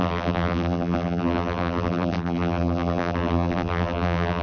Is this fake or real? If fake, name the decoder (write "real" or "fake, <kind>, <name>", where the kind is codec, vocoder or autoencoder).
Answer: fake, vocoder, BigVGAN v2